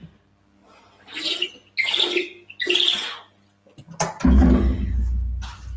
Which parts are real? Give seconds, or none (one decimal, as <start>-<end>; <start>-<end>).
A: 0.0-5.8